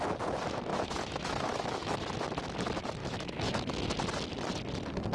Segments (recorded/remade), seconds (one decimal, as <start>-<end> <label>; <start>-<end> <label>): 0.0-0.7 recorded; 0.7-2.0 remade; 2.0-3.0 recorded; 3.0-3.9 remade; 3.9-5.1 recorded